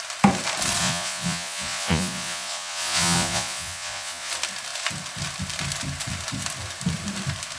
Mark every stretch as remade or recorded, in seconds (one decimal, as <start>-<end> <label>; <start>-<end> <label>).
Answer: 0.0-0.8 recorded; 0.8-4.3 remade; 4.3-7.6 recorded